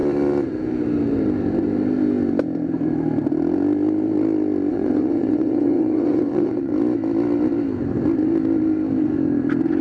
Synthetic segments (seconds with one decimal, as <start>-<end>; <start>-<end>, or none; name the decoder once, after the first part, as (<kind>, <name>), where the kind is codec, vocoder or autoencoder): 4.7-6.7 (vocoder, WaveNeXt)